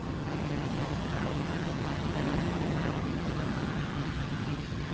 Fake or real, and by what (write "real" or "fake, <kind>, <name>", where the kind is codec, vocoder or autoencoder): fake, vocoder, HiFi-GAN